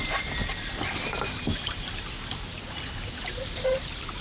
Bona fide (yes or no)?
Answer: yes